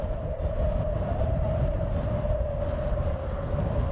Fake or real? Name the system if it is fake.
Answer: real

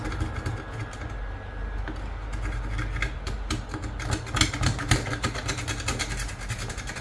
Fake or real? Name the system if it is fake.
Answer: real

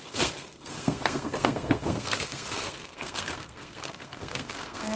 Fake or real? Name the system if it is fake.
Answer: fake, codec, SNAC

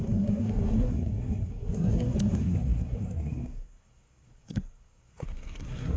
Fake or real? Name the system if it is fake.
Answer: fake, codec, SNAC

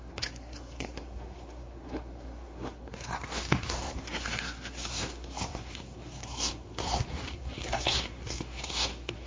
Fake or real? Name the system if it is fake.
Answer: fake, codec, SNAC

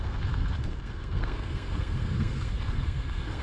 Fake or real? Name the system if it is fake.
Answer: fake, codec, SNAC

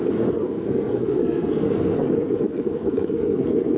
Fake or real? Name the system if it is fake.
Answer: fake, codec, SNAC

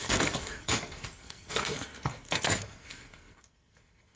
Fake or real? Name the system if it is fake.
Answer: fake, codec, SNAC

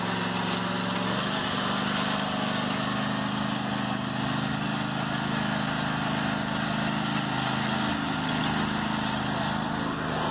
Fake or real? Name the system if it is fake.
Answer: real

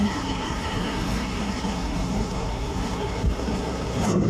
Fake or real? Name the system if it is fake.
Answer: fake, codec, SNAC